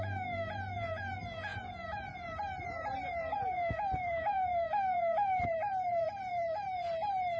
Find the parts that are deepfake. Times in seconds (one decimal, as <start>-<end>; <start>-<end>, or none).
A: 0.0-7.4